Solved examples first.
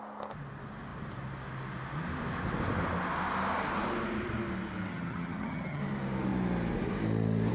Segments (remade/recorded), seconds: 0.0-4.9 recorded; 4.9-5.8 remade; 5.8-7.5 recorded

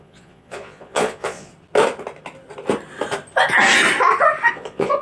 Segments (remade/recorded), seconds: 0.0-1.5 remade; 1.5-4.5 recorded; 4.5-5.0 remade

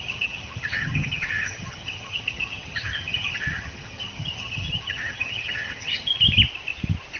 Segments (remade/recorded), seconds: 0.0-6.1 remade; 6.1-7.2 recorded

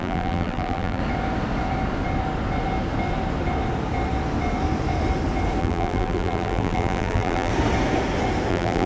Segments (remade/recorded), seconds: 0.0-1.0 remade; 1.0-5.6 recorded; 5.6-7.5 remade; 7.5-8.5 recorded; 8.5-8.9 remade

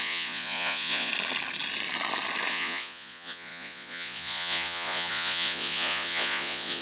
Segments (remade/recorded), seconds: 0.0-1.1 remade; 1.1-2.5 recorded; 2.5-6.8 remade

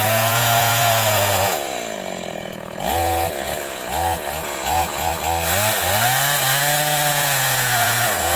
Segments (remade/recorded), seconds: 0.0-5.1 remade; 5.1-7.1 recorded; 7.1-8.4 remade

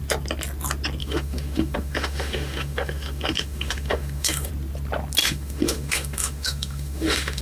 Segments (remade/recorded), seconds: 0.0-1.0 recorded; 1.0-4.5 remade; 4.5-5.2 recorded; 5.2-7.4 remade